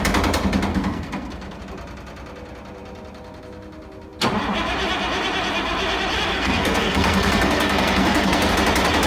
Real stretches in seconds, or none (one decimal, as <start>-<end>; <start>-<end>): 0.0-0.7; 1.6-6.3; 8.5-9.1